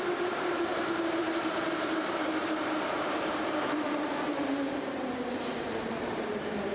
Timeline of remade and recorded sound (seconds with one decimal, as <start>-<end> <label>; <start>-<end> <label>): 0.0-6.7 remade

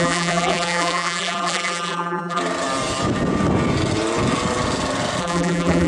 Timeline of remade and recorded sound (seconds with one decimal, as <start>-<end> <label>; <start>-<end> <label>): 0.0-2.4 remade; 2.4-5.2 recorded; 5.2-5.9 remade

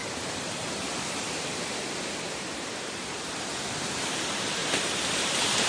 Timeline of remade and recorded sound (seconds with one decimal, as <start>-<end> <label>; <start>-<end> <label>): 0.0-3.4 remade; 3.4-4.6 recorded; 4.6-5.7 remade

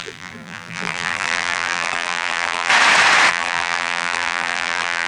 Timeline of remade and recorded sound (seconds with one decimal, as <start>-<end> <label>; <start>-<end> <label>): 0.0-2.7 remade; 2.7-3.3 recorded; 3.3-5.1 remade

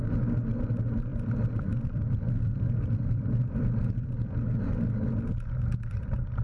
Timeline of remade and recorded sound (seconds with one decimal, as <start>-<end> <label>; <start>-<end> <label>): 0.0-1.1 recorded; 1.1-4.9 remade; 4.9-6.4 recorded

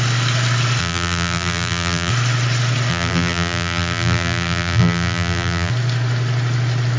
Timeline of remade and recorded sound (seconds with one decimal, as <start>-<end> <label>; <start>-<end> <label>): 0.0-0.8 recorded; 0.8-2.1 remade; 2.1-2.9 recorded; 2.9-5.7 remade; 5.7-7.0 recorded

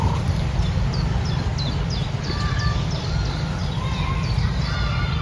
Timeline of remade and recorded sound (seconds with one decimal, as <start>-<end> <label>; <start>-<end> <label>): 0.0-1.5 recorded; 1.5-4.6 remade; 4.6-5.2 recorded